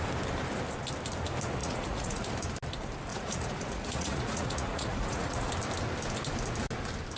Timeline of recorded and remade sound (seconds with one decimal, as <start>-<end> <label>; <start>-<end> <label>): 0.0-1.6 recorded; 1.6-2.3 remade; 2.3-3.1 recorded; 3.1-5.5 remade; 5.5-7.2 recorded